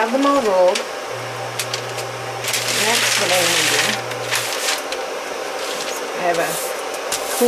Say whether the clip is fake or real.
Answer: real